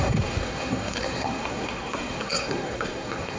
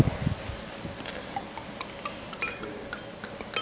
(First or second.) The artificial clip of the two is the first